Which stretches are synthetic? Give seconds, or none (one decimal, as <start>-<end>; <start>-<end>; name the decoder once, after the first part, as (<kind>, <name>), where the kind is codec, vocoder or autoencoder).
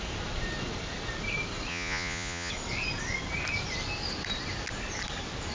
1.7-2.5 (vocoder, Vocos)